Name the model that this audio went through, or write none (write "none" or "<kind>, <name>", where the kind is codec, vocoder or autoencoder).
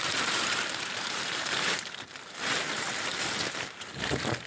vocoder, BigVGAN v2